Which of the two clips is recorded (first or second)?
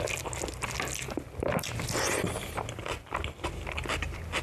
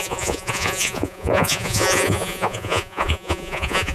first